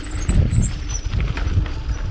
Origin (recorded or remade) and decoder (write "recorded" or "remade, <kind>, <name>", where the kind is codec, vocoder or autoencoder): recorded